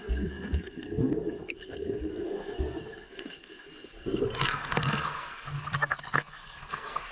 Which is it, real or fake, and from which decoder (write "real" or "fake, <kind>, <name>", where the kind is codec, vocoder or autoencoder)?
fake, codec, SNAC